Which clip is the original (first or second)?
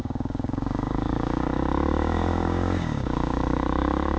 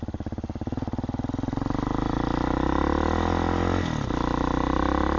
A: second